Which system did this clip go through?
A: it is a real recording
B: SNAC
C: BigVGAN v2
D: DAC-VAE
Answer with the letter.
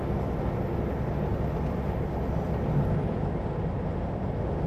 A